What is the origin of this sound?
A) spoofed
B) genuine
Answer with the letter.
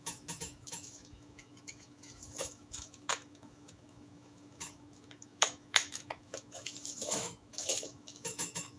A